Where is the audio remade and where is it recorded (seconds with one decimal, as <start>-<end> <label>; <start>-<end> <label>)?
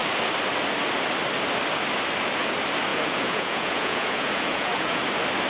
0.0-2.9 recorded; 2.9-5.0 remade; 5.0-5.5 recorded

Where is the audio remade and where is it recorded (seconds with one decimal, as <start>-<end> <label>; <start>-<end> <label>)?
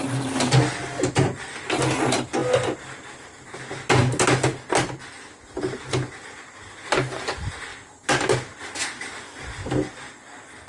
0.0-10.7 recorded